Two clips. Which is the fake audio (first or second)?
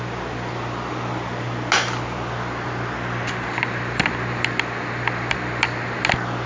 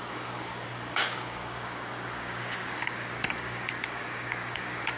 second